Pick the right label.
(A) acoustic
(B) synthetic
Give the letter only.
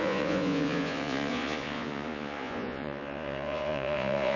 B